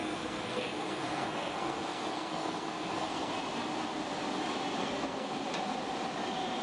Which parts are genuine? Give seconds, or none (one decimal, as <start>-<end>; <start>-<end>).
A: 3.3-4.8; 5.3-6.6